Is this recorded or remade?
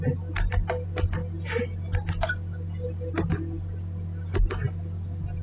recorded